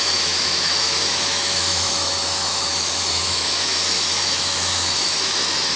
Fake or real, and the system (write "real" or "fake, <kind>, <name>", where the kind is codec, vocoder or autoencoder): fake, autoencoder, DAC-VAE